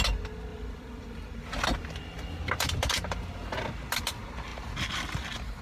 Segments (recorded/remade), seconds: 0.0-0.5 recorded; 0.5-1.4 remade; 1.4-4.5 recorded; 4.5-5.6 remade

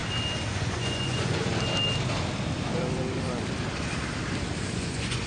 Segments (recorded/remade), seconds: 0.0-0.5 recorded; 0.5-1.5 remade; 1.5-4.7 recorded; 4.7-5.3 remade

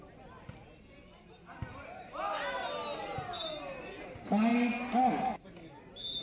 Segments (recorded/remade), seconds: 0.0-6.2 recorded

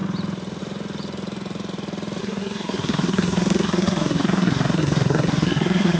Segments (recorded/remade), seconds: 0.0-2.2 recorded; 2.2-6.0 remade

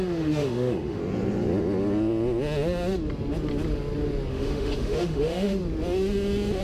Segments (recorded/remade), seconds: 0.0-1.0 remade; 1.0-4.3 recorded; 4.3-5.6 remade; 5.6-6.6 recorded

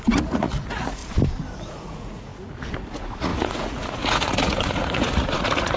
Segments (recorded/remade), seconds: 0.0-1.0 remade; 1.0-1.6 recorded; 1.6-2.3 remade; 2.3-2.9 recorded; 2.9-5.8 remade

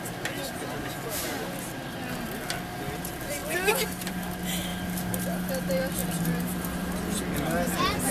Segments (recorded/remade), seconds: 0.0-8.1 recorded